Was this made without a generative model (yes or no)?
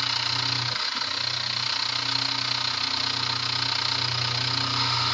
yes